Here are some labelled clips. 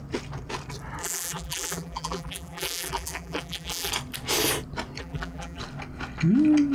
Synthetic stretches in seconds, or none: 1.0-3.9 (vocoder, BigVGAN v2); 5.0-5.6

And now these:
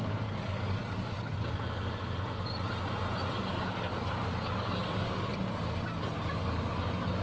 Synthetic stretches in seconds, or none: 0.0-0.8 (codec, DAC); 3.5-5.3; 6.3-7.2

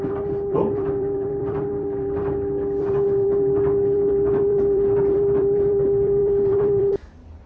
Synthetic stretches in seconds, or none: 0.0-2.2 (vocoder, BigVGAN v2); 2.8-7.5